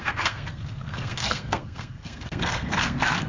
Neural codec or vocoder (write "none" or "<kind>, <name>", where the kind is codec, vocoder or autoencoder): codec, SNAC